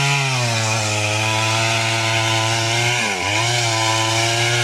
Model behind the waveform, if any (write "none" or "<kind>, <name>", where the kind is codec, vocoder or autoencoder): none